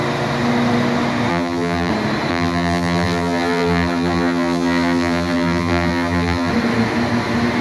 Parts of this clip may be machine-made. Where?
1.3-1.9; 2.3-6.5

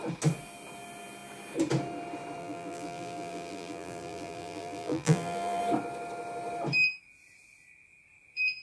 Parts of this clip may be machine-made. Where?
2.4-5.6

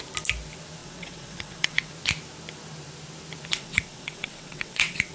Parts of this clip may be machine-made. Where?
0.8-1.9; 3.5-5.1

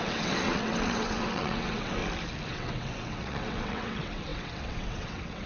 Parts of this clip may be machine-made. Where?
0.0-2.0; 2.5-5.5

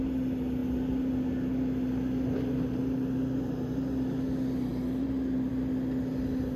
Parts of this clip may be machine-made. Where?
none

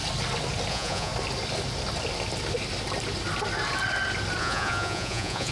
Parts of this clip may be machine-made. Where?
0.7-1.1; 4.4-5.5

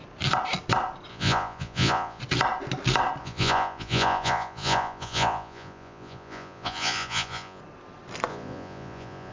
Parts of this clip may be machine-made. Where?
1.1-2.2; 3.2-7.6; 8.3-9.3

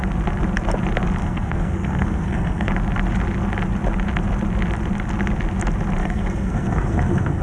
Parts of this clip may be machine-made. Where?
1.2-2.7; 6.0-7.4